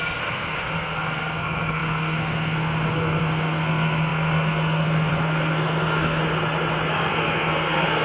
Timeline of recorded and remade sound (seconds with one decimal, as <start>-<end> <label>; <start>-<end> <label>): 0.0-6.2 remade; 6.2-6.9 recorded; 6.9-8.0 remade